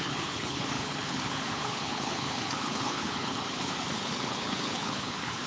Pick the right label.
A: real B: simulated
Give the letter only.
B